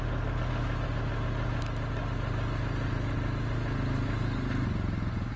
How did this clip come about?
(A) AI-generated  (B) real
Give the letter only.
B